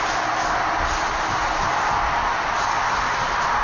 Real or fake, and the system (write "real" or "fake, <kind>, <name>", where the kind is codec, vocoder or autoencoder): real